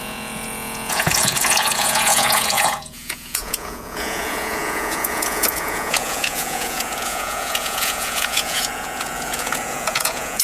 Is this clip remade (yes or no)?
yes